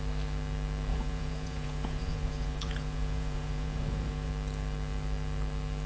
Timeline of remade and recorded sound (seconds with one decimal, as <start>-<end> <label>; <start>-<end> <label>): 0.0-0.9 recorded; 0.9-4.3 remade; 4.3-5.9 recorded